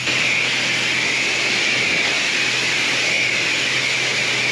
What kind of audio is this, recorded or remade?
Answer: recorded